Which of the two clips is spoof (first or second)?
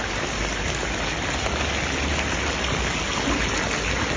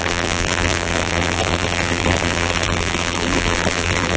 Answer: second